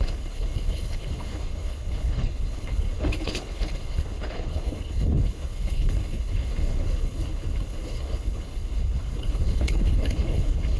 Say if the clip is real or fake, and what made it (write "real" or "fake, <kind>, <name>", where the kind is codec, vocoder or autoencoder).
fake, codec, HILCodec